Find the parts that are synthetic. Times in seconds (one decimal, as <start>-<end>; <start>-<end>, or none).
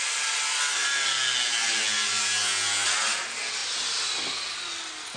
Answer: 1.6-2.2